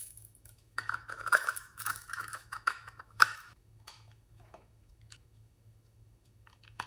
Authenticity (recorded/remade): remade